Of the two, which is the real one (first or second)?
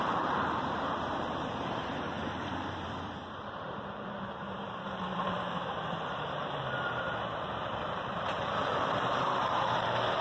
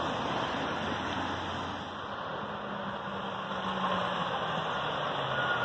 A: second